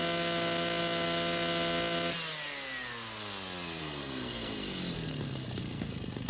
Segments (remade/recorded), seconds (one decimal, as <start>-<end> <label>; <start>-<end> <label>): 0.0-3.8 recorded; 3.8-6.3 remade